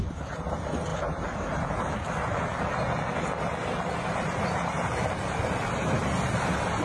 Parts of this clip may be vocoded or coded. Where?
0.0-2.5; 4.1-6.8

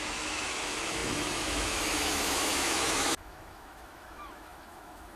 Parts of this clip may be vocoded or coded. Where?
0.0-5.2

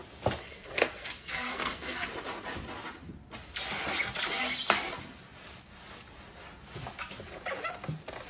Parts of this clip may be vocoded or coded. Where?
0.4-2.1